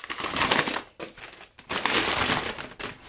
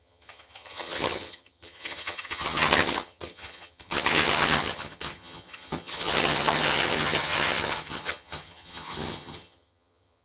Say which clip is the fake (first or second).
second